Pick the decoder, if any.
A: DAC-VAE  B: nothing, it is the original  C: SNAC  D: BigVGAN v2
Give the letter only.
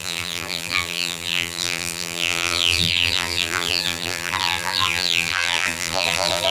D